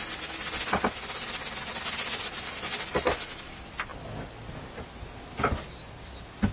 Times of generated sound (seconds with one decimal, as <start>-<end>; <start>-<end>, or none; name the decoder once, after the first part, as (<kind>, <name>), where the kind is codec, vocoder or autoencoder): none